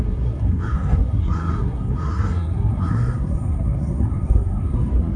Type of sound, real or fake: fake